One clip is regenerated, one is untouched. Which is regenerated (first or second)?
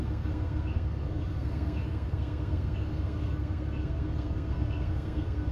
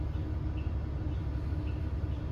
first